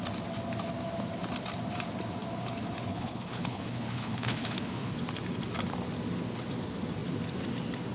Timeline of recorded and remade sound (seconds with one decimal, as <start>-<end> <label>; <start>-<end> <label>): 0.0-2.9 recorded; 2.9-4.9 remade; 4.9-7.9 recorded